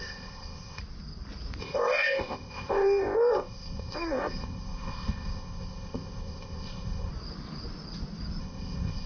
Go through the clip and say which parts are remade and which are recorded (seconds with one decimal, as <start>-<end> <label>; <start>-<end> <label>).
0.0-0.8 remade; 0.8-1.6 recorded; 1.6-7.1 remade; 7.1-8.4 recorded; 8.4-9.1 remade